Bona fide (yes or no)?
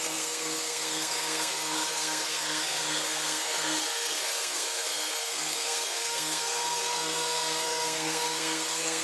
no